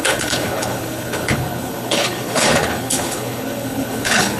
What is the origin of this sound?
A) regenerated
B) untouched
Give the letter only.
A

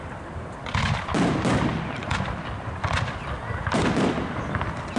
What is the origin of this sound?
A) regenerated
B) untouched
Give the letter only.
B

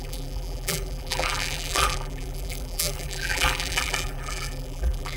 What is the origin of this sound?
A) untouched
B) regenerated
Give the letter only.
B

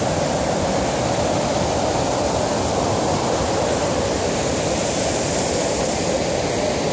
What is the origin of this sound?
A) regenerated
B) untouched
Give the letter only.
B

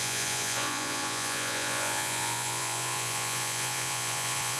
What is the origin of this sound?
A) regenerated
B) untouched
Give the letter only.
A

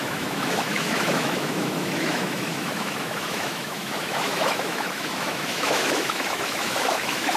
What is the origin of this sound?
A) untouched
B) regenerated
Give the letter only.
B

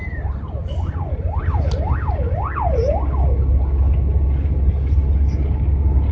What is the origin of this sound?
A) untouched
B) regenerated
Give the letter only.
A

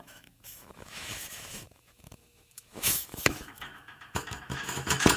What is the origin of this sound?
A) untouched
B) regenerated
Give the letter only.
B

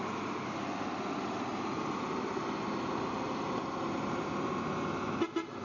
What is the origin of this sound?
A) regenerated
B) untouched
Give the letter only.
B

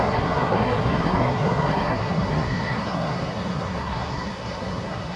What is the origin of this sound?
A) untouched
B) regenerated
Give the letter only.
B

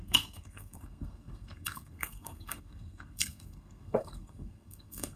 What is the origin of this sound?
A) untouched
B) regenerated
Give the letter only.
B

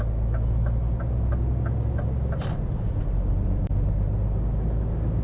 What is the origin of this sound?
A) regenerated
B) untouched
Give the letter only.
B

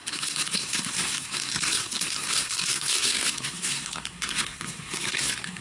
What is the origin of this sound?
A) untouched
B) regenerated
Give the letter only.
B